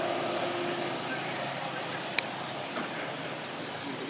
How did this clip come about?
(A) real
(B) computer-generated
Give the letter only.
A